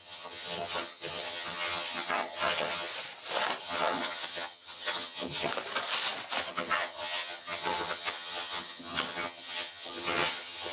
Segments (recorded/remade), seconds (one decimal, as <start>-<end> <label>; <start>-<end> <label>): 0.0-2.9 remade; 2.9-3.6 recorded; 3.6-5.5 remade; 5.5-6.4 recorded; 6.4-10.7 remade